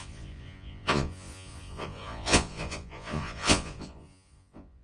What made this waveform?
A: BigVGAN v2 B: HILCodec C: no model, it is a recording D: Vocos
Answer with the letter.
D